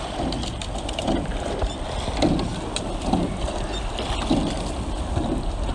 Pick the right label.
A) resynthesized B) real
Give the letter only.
B